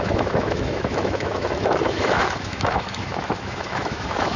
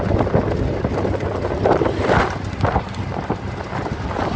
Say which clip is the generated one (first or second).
first